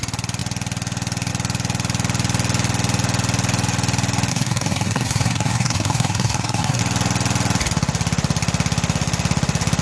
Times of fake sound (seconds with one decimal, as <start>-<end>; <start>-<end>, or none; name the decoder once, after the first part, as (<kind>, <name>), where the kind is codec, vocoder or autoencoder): 4.3-6.8 (codec, SNAC)